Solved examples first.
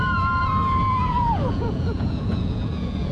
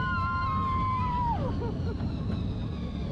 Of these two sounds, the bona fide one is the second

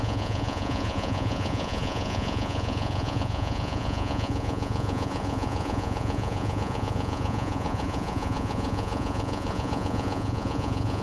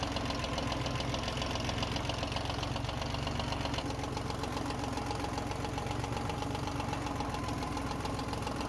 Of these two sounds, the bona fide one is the second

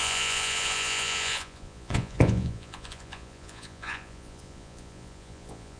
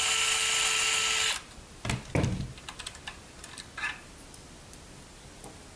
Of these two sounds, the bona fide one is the second